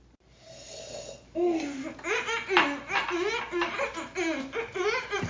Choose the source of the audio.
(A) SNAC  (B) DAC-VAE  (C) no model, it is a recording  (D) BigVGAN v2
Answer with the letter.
C